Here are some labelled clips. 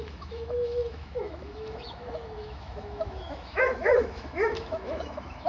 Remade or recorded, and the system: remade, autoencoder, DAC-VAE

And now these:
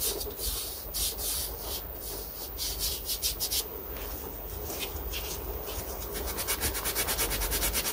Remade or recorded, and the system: recorded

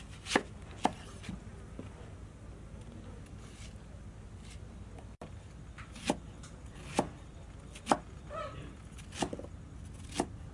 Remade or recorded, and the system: recorded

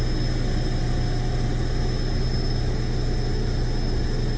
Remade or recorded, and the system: recorded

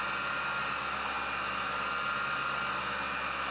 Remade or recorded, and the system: recorded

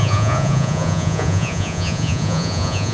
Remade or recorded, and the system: remade, vocoder, Vocos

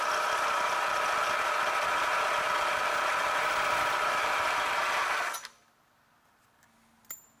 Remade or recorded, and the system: recorded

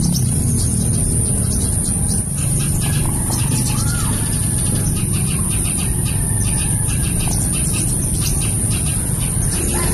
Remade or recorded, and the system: recorded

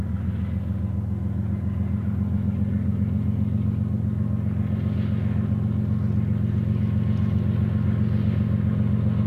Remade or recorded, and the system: recorded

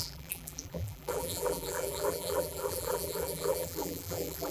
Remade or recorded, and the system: remade, vocoder, BigVGAN v2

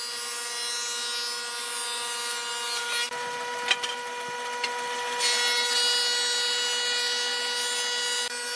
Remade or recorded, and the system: recorded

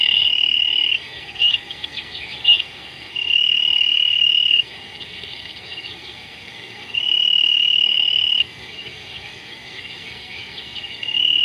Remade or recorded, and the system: remade, codec, SNAC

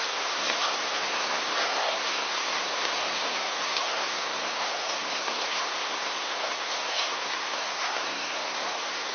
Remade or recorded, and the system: remade, codec, SNAC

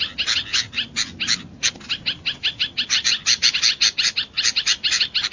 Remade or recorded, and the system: recorded